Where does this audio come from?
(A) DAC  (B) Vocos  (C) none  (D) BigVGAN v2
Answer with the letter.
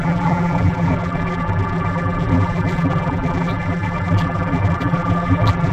D